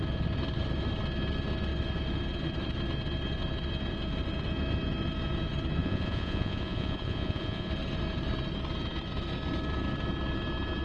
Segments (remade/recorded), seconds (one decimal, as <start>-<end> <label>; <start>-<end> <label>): 0.0-5.8 recorded; 5.8-7.7 remade; 7.7-10.8 recorded